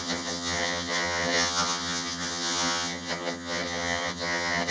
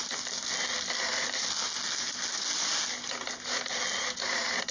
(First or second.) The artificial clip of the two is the first